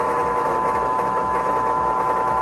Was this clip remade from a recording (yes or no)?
yes